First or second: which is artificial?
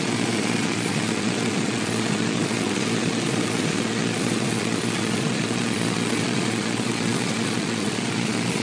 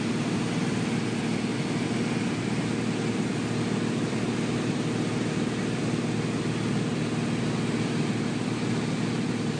first